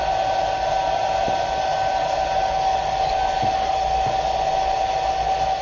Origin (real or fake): real